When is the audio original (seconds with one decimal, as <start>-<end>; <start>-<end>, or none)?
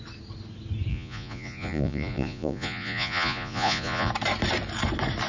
0.0-0.9; 4.1-5.3